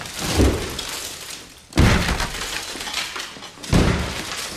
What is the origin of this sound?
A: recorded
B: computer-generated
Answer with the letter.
A